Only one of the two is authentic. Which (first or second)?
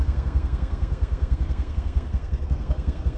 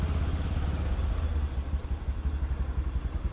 second